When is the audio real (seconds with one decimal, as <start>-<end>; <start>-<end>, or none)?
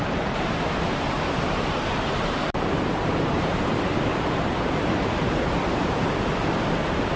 3.6-4.1; 5.3-7.2